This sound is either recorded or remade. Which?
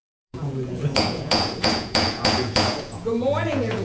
remade